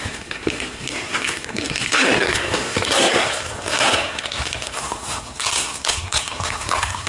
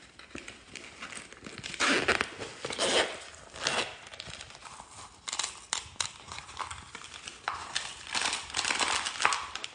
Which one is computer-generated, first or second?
first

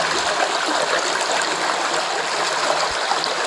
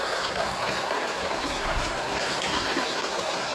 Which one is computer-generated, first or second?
second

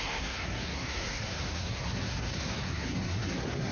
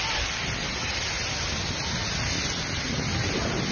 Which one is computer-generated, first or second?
first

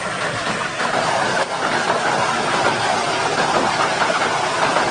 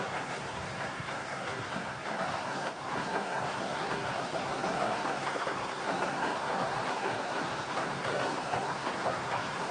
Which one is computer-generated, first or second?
second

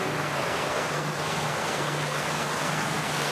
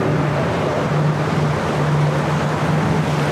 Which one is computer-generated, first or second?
first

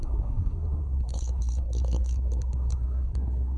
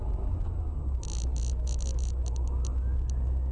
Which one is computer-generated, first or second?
first